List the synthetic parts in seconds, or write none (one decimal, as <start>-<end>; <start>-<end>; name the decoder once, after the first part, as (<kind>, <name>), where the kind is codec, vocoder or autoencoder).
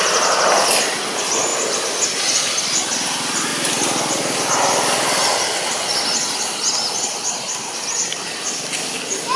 none